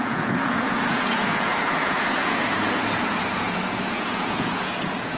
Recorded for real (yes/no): no